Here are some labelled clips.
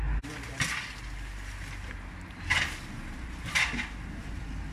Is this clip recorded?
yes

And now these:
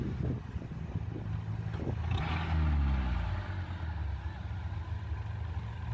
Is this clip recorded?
yes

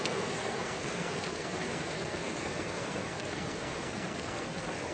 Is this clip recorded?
no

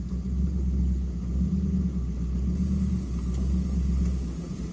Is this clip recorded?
yes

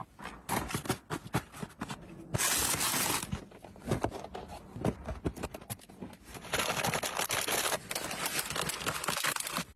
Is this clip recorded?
yes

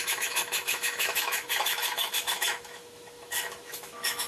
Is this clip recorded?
no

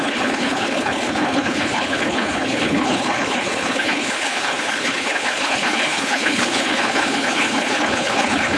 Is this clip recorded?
no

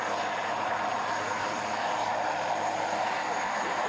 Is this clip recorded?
yes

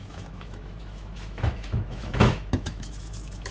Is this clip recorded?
no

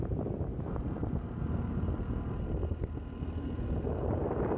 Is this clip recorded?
yes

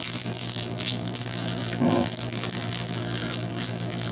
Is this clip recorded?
no